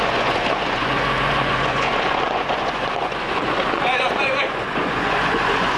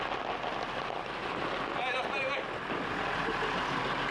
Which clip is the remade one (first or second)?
first